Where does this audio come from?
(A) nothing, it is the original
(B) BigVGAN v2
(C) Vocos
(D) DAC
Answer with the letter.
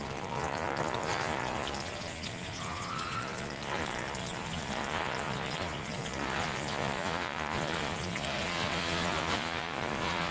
C